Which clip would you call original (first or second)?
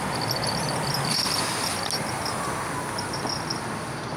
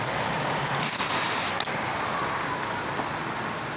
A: first